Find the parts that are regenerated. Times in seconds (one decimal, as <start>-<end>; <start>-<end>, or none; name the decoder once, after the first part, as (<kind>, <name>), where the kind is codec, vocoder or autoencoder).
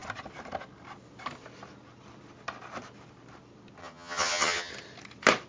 3.8-4.7 (vocoder, HiFi-GAN)